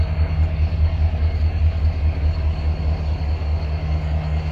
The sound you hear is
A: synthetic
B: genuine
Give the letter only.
A